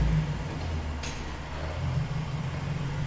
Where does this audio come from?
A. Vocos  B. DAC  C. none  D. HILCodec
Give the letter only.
C